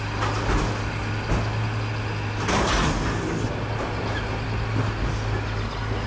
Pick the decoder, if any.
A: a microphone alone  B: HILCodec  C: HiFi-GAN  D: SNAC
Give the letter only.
A